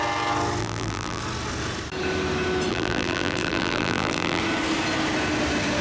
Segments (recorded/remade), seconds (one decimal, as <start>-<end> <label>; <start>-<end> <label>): 0.0-0.6 recorded; 0.6-1.2 remade; 1.2-2.7 recorded; 2.7-4.4 remade; 4.4-5.8 recorded